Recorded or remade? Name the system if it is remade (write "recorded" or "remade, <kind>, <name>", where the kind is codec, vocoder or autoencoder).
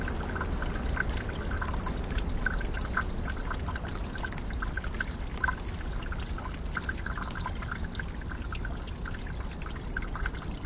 recorded